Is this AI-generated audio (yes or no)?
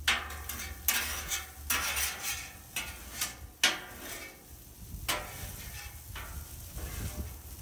no